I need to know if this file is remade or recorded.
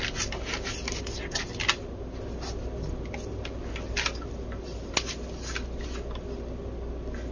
recorded